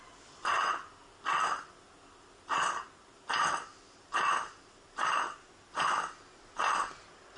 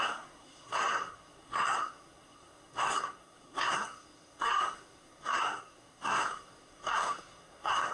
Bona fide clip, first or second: first